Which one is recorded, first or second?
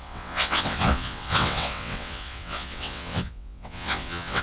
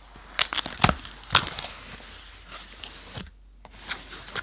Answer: second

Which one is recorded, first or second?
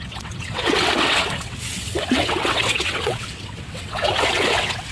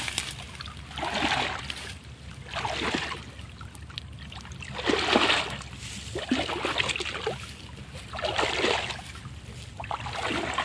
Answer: second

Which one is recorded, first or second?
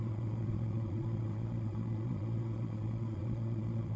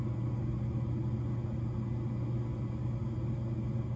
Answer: second